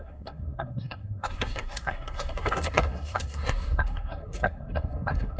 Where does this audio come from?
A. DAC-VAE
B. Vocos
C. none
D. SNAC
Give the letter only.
D